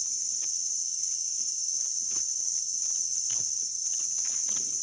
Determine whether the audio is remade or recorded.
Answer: remade